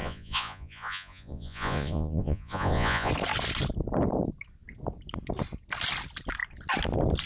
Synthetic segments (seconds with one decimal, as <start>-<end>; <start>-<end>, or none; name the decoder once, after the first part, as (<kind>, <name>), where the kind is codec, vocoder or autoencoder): 0.0-3.1 (vocoder, Vocos)